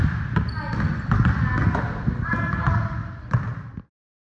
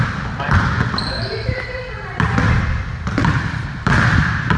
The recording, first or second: first